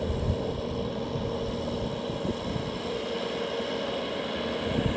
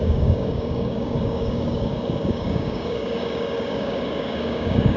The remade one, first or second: second